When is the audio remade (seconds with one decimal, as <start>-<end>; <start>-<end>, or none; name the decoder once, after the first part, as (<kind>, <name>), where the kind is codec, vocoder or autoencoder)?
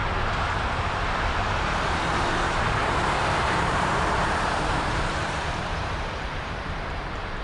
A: 0.7-7.4 (vocoder, BigVGAN v2)